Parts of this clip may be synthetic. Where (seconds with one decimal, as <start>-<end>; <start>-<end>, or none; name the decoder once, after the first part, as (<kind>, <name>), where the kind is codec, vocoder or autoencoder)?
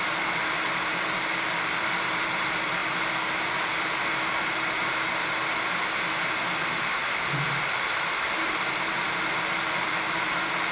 0.0-2.8 (vocoder, BigVGAN v2); 6.6-7.0; 7.6-10.7